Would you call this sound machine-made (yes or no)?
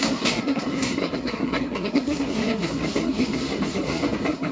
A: yes